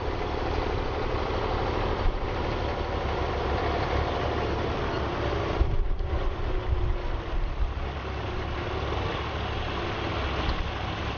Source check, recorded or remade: recorded